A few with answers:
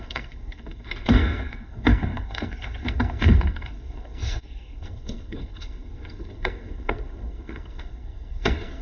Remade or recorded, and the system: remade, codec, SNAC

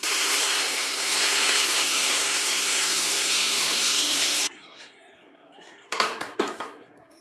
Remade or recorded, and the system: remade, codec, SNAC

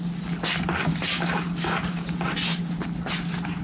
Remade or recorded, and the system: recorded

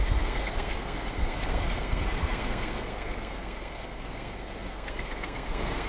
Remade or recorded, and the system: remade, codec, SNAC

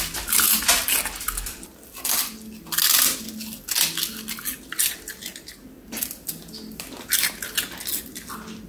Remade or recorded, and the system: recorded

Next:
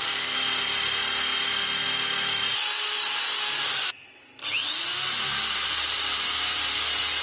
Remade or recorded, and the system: recorded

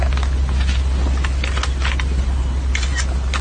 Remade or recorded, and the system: recorded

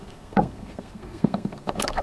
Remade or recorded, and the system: remade, codec, SNAC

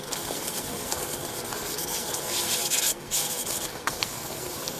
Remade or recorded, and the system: remade, codec, SNAC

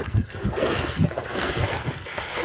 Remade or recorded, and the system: remade, codec, SNAC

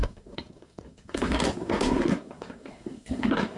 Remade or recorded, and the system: remade, codec, SNAC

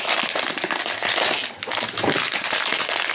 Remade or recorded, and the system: recorded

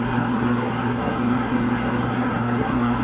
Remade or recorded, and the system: remade, codec, SNAC